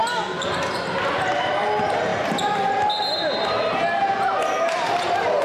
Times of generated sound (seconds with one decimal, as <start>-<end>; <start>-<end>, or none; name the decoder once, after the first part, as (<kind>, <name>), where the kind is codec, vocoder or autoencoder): 0.0-0.6 (vocoder, BigVGAN v2)